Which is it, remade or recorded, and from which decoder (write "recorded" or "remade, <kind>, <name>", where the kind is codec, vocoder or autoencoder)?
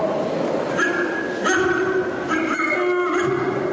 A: recorded